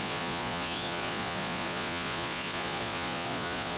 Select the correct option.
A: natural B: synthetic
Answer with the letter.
B